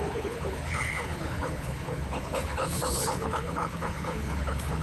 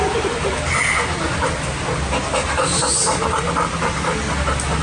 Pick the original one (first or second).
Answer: second